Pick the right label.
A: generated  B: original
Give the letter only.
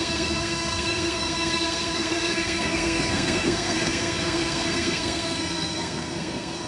A